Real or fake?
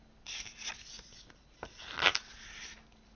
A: real